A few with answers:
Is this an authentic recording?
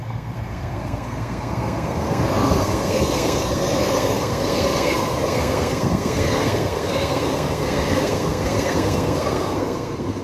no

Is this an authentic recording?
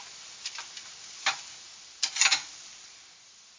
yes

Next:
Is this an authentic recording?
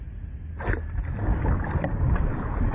yes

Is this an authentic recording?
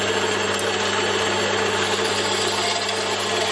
yes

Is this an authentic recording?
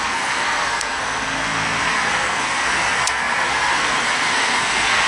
no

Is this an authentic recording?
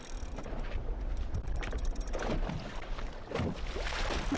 yes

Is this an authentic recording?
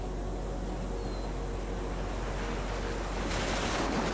yes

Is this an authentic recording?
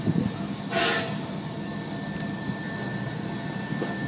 yes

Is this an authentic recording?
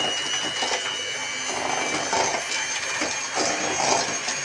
yes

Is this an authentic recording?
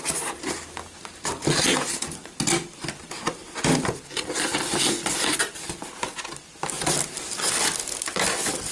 yes